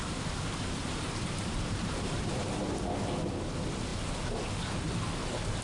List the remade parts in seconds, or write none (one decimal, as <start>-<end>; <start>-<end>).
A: 0.8-2.4